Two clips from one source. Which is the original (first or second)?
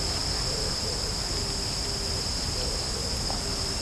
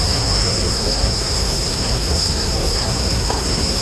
first